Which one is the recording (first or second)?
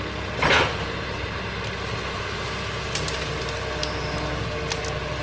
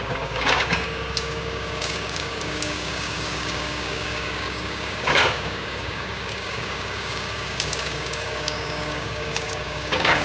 first